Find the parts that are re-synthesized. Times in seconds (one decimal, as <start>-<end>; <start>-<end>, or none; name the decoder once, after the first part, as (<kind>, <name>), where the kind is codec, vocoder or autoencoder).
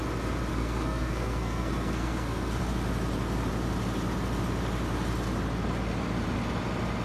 0.5-2.6 (codec, SNAC)